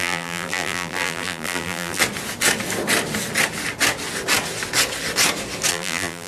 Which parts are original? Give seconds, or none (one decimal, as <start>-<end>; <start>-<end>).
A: 2.0-5.7